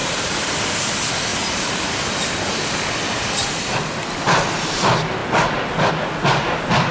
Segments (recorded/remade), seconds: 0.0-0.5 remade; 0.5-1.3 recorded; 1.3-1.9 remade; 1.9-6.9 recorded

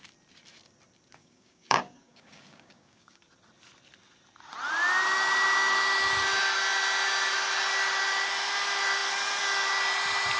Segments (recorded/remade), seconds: 0.0-1.2 recorded; 1.2-3.2 remade; 3.2-10.4 recorded

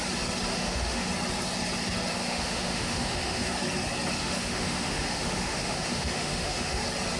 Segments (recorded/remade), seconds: 0.0-0.5 recorded; 0.5-1.1 remade; 1.1-2.2 recorded; 2.2-3.5 remade; 3.5-4.2 recorded; 4.2-6.8 remade; 6.8-7.2 recorded

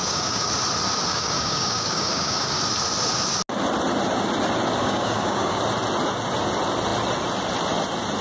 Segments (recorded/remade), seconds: 0.0-0.5 remade; 0.5-1.1 recorded; 1.1-2.6 remade; 2.6-4.8 recorded; 4.8-5.6 remade; 5.6-8.2 recorded

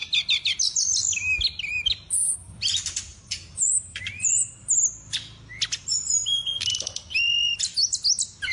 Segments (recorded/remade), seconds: 0.0-3.1 recorded; 3.1-4.5 remade; 4.5-5.8 recorded; 5.8-6.4 remade; 6.4-8.5 recorded